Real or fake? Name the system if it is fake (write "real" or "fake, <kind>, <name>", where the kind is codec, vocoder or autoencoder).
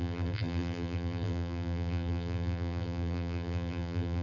fake, vocoder, BigVGAN v2